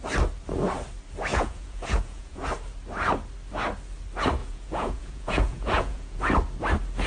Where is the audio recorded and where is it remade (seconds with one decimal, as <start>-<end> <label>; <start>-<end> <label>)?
0.0-1.3 recorded; 1.3-2.4 remade; 2.4-4.4 recorded; 4.4-6.2 remade; 6.2-7.1 recorded